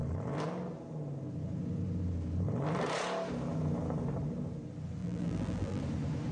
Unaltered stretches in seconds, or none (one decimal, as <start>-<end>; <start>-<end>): 0.0-5.0; 5.8-6.3